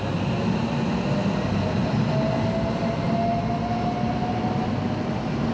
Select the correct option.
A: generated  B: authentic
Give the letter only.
B